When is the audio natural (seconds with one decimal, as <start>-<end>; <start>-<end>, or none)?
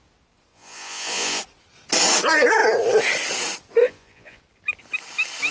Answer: 0.0-0.5; 1.4-3.8; 4.4-5.5